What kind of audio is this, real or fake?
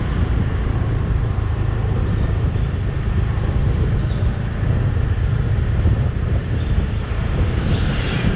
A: fake